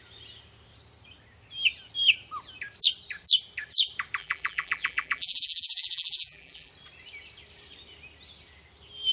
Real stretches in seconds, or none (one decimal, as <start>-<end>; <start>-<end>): 0.0-4.2; 6.7-9.1